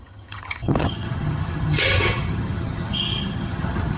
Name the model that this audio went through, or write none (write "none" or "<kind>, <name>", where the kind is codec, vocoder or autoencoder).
vocoder, HiFi-GAN